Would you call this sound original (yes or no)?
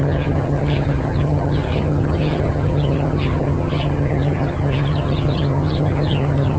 no